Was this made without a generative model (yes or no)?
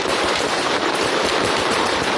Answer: no